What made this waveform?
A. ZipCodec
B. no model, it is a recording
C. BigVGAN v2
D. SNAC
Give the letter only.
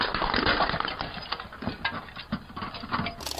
B